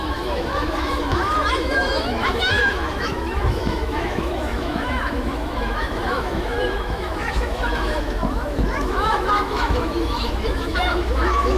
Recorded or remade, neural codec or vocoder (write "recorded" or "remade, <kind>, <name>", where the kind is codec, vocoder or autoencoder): remade, autoencoder, DAC-VAE